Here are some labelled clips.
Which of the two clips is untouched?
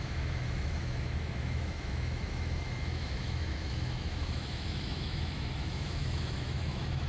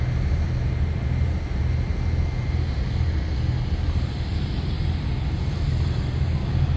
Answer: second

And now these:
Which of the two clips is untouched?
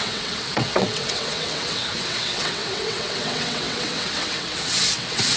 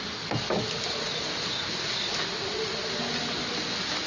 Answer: second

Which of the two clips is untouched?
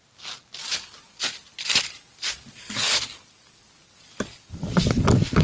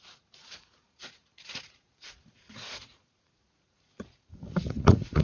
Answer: first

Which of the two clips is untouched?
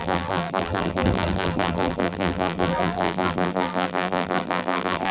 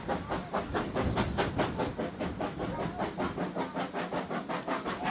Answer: second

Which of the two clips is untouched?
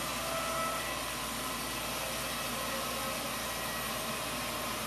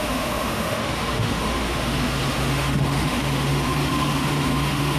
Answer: first